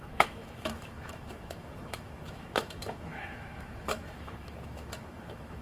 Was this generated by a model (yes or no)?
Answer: yes